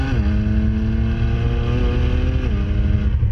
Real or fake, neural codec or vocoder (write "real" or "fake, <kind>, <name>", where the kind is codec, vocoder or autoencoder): real